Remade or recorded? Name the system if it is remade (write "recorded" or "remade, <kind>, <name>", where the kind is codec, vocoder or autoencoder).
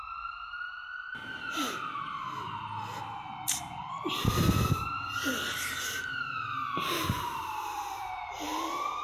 recorded